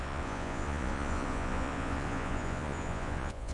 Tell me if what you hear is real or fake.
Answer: fake